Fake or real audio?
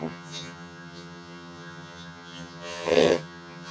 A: fake